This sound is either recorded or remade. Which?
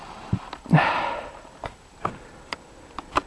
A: recorded